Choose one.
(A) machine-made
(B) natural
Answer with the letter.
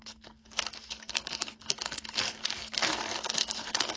A